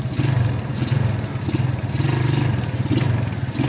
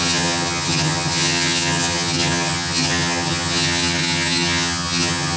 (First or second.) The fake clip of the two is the second